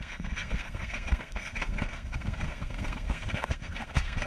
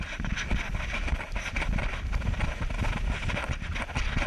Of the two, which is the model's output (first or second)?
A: first